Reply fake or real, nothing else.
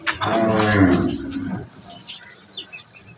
real